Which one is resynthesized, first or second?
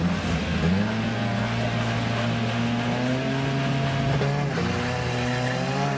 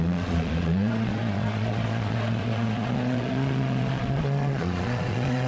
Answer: second